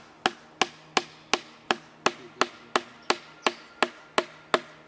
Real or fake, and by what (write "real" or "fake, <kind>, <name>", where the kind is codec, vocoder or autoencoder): real